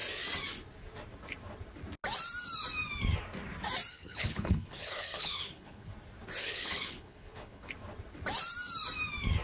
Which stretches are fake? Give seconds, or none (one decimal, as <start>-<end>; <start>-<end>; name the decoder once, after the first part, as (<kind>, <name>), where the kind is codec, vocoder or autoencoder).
3.9-5.9 (codec, HILCodec); 6.4-7.7